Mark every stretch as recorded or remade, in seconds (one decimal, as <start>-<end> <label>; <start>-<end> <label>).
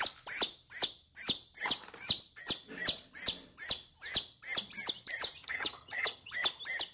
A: 0.0-5.4 recorded; 5.4-6.3 remade; 6.3-6.9 recorded